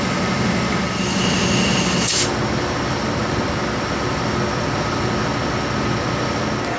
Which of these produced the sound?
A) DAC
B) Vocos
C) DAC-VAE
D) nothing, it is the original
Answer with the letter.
D